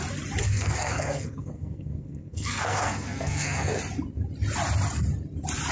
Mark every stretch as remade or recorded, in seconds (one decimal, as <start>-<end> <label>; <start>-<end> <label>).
0.0-0.4 recorded; 0.4-3.8 remade; 3.8-5.7 recorded